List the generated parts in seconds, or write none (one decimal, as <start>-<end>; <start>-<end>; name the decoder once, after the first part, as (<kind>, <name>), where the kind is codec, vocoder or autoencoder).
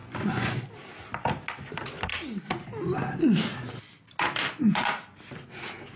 0.0-0.6 (vocoder, Vocos)